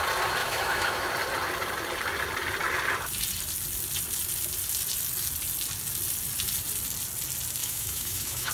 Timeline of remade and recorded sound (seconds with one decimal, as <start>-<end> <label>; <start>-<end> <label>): 0.0-0.4 recorded; 0.4-1.1 remade; 1.1-7.6 recorded; 7.6-8.5 remade